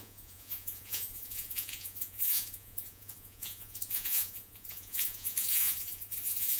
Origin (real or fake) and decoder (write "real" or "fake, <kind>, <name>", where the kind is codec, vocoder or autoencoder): fake, vocoder, Vocos